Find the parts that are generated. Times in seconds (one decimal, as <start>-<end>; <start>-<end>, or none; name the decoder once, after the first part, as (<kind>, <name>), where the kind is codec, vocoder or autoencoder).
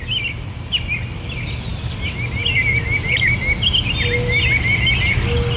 none